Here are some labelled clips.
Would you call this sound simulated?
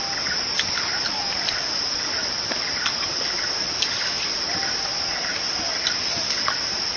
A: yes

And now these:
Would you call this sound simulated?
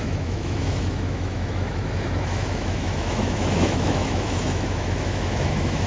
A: yes